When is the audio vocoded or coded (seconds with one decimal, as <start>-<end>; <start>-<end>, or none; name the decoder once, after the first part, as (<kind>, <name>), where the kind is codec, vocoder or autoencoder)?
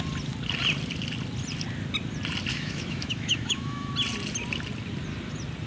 2.5-3.9 (autoencoder, DAC-VAE)